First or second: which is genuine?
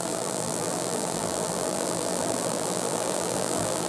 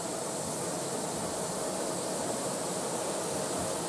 second